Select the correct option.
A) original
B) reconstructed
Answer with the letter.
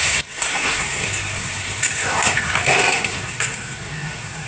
B